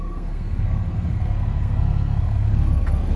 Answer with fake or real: fake